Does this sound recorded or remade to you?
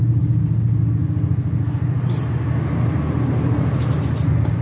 recorded